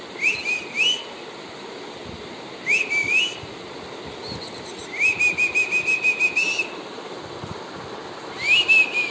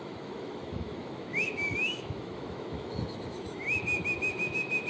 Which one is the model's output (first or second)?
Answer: second